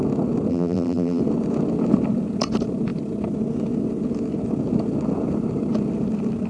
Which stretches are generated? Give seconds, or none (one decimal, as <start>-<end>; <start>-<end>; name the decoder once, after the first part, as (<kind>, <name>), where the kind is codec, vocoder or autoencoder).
0.5-1.2 (vocoder, BigVGAN v2)